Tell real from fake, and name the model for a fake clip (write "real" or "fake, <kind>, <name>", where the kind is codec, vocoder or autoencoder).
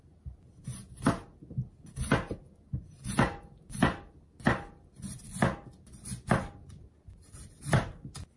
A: real